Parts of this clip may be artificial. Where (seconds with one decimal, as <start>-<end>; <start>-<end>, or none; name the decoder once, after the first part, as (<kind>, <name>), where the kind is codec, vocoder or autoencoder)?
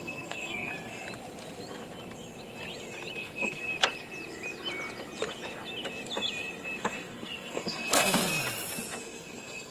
0.0-0.7 (codec, SNAC); 3.2-3.7; 6.8-8.2; 9.0-9.7